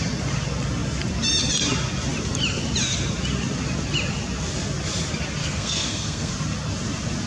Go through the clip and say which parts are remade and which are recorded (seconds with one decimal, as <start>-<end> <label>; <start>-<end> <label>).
0.0-5.4 recorded; 5.4-6.3 remade; 6.3-7.3 recorded